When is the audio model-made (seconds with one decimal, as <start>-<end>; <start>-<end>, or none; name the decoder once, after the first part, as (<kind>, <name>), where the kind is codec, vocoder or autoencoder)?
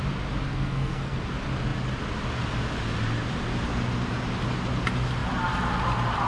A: 0.5-1.2 (codec, SNAC)